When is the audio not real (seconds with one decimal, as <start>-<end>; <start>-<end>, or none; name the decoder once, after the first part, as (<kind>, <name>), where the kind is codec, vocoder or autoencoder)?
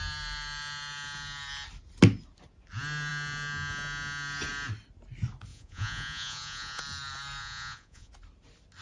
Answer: 5.5-6.8 (vocoder, Vocos); 7.4-8.1